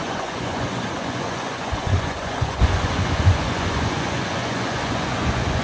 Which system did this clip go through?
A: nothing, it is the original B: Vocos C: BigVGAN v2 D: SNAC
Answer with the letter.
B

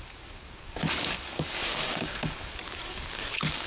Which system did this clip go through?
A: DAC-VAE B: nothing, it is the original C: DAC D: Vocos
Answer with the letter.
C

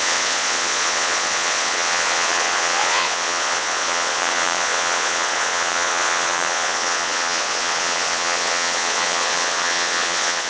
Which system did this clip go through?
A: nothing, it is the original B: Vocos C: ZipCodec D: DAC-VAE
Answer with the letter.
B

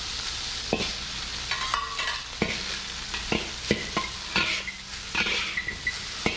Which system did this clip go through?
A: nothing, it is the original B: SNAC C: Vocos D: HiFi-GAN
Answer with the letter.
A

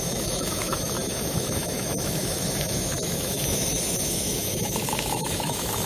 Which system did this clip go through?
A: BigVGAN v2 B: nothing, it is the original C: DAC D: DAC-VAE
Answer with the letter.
D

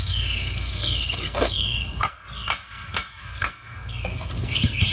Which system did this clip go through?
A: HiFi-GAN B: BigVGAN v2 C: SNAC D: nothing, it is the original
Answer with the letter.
C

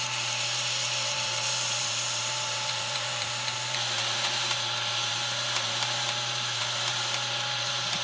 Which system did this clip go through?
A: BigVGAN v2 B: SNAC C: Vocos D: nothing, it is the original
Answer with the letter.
A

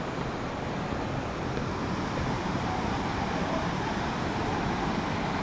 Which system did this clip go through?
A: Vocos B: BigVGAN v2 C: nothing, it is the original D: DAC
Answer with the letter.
C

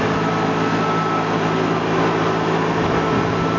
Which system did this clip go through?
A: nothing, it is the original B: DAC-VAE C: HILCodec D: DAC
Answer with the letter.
A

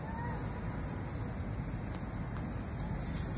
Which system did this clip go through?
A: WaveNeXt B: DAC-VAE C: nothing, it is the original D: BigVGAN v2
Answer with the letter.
C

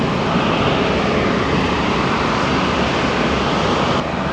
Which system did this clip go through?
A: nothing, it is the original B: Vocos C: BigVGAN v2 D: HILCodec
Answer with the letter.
A